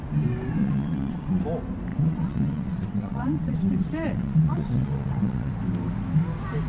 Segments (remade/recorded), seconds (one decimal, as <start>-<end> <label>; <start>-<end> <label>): 0.0-0.6 recorded; 0.6-1.4 remade; 1.4-1.9 recorded; 1.9-5.5 remade; 5.5-6.7 recorded